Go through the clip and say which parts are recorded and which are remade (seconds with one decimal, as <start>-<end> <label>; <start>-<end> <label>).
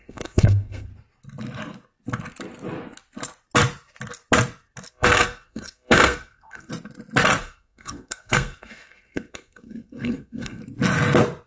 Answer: 0.0-0.9 remade; 0.9-4.9 recorded; 4.9-6.7 remade; 6.7-7.4 recorded; 7.4-10.6 remade; 10.6-11.5 recorded